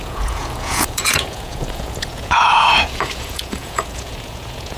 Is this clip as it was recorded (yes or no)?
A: no